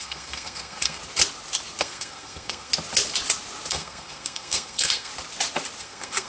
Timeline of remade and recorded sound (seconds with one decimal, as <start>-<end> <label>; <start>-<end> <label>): 0.0-1.0 remade; 1.0-1.8 recorded; 1.8-2.7 remade; 2.7-3.7 recorded; 3.7-5.1 remade; 5.1-5.8 recorded; 5.8-6.3 remade